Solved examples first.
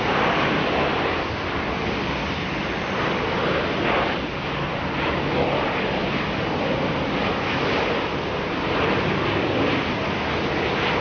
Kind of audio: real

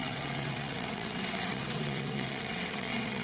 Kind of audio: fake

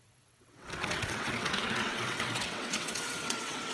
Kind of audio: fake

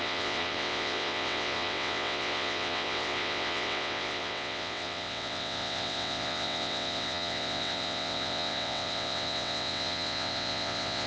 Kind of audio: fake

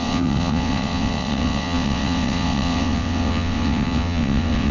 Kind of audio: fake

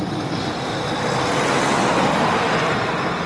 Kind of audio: real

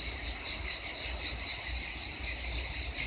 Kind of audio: real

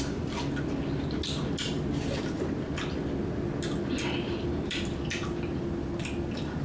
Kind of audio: real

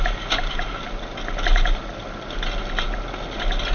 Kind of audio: real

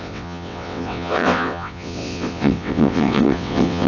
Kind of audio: fake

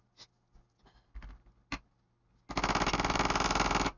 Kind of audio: real